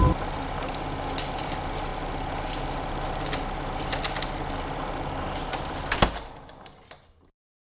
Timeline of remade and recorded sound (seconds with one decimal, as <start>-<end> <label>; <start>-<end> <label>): 0.0-7.6 recorded